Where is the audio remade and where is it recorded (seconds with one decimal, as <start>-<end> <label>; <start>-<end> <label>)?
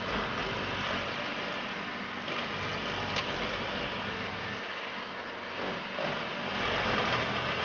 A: 0.0-4.3 recorded; 4.3-4.9 remade; 4.9-7.6 recorded